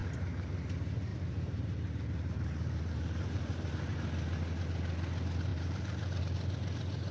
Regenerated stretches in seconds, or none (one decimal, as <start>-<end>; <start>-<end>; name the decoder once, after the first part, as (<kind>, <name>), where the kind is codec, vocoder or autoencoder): 0.0-0.5 (vocoder, BigVGAN v2); 1.1-3.9; 5.5-6.2